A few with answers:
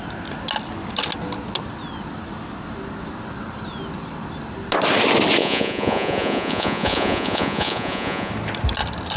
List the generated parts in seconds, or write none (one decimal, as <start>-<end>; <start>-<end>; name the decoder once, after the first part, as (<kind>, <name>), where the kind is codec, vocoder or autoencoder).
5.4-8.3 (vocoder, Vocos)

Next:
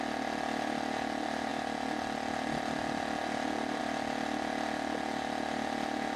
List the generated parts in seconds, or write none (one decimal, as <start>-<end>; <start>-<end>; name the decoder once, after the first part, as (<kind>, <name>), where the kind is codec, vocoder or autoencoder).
none

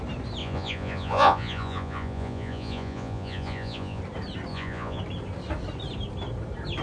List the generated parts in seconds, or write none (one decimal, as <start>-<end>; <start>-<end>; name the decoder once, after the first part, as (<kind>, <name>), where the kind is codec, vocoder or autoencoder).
0.4-4.0 (vocoder, Vocos); 4.5-5.0

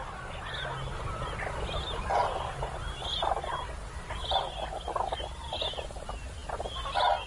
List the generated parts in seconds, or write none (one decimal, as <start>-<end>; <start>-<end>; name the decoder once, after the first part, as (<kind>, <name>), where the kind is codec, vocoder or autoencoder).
none

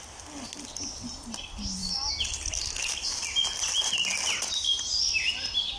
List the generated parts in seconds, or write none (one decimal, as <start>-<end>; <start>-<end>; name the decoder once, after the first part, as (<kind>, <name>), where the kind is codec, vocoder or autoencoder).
none

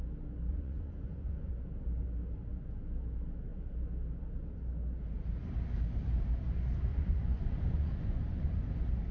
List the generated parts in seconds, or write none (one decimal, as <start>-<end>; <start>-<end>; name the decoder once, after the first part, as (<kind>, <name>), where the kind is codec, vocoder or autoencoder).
0.5-1.5 (vocoder, Vocos); 6.9-8.7

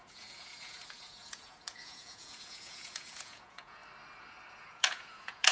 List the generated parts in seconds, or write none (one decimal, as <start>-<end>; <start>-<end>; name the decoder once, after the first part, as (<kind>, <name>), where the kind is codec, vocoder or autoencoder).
0.0-3.8 (vocoder, Vocos); 4.6-5.5